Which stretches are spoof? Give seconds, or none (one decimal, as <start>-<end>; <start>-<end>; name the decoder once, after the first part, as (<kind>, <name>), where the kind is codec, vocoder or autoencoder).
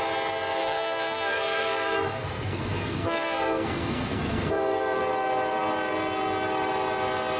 0.6-5.0 (codec, SNAC)